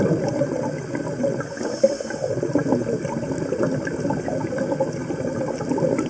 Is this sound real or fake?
real